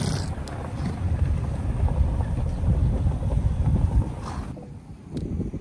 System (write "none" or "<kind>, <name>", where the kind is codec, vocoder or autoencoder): none